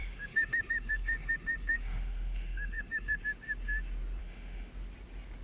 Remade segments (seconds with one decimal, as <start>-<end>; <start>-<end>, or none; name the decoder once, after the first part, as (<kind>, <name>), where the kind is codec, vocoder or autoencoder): 0.0-3.2 (autoencoder, DAC-VAE); 4.2-4.7